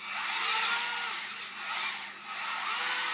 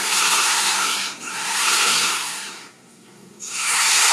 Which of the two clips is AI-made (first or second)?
second